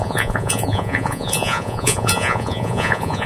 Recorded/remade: remade